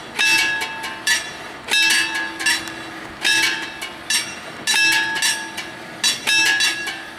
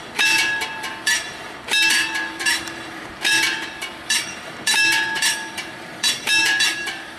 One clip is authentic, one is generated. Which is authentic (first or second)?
first